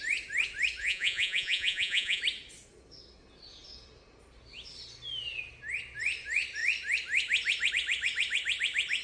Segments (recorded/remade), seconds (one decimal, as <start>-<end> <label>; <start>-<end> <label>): 0.0-0.8 recorded; 0.8-2.2 remade; 2.2-9.0 recorded